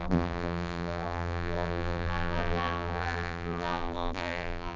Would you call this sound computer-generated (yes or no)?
yes